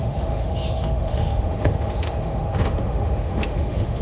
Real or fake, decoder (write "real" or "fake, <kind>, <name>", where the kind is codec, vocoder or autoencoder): fake, autoencoder, DAC-VAE